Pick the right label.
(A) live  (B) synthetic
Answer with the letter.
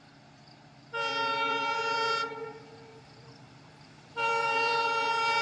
B